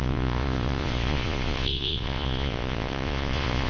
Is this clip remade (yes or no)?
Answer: yes